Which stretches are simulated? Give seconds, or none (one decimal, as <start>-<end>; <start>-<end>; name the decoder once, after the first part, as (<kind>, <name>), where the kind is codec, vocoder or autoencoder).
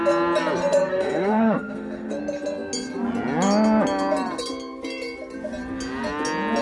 0.9-2.2 (codec, SNAC)